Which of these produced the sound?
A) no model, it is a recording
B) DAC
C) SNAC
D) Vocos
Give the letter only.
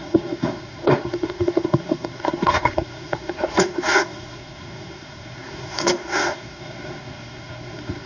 C